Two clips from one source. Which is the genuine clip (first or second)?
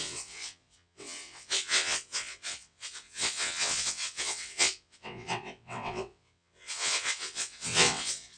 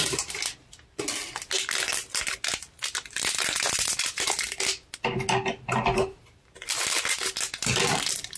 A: second